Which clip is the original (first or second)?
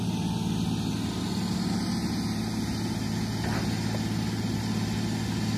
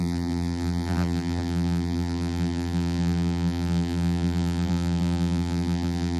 first